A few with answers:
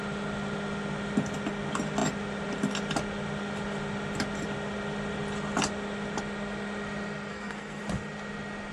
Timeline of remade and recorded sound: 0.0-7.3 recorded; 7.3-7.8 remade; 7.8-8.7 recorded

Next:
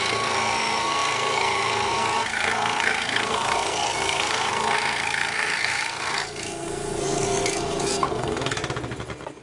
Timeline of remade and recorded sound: 0.0-8.6 remade; 8.6-9.4 recorded

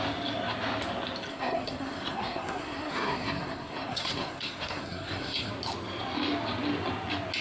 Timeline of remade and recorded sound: 0.0-1.3 recorded; 1.3-5.5 remade; 5.5-7.4 recorded

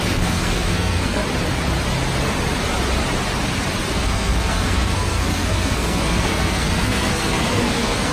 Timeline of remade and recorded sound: 0.0-1.2 remade; 1.2-3.9 recorded; 3.9-8.1 remade